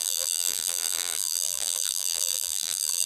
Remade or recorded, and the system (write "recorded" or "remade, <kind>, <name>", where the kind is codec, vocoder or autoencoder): remade, vocoder, BigVGAN v2